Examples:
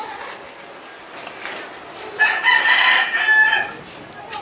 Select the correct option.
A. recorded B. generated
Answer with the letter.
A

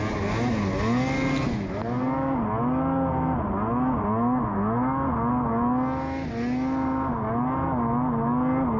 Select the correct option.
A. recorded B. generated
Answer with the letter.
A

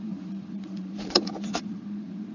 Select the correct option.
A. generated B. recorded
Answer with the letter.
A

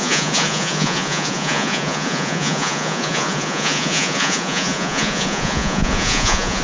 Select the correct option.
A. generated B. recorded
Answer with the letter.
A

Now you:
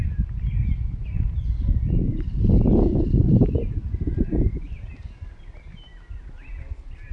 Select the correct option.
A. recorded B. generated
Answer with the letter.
A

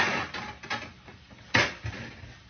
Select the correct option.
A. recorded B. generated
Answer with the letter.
A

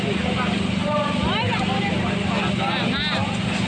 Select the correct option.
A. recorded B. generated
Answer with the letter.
A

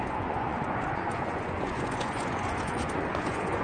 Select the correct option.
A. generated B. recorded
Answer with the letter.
A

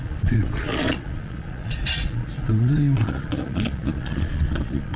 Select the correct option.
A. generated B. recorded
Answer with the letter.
A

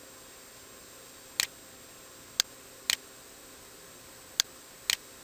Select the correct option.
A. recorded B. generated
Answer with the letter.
A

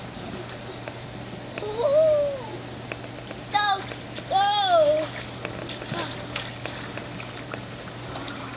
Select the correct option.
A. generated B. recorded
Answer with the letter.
B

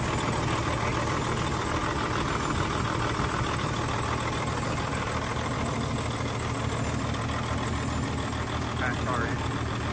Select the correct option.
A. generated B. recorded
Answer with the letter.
B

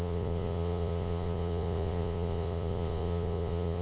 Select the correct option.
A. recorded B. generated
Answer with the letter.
B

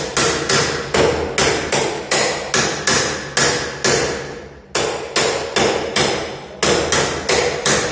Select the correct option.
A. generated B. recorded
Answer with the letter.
B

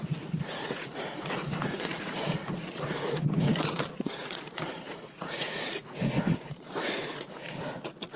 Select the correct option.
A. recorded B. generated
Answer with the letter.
B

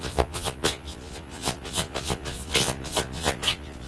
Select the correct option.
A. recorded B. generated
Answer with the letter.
B